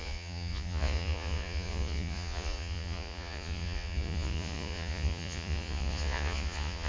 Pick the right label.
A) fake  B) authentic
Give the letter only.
A